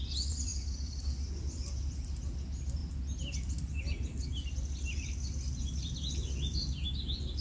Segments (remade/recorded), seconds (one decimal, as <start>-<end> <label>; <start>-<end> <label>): 0.0-7.4 recorded